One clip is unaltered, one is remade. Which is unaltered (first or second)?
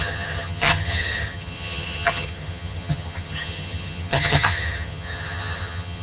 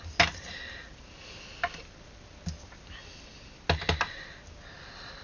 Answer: second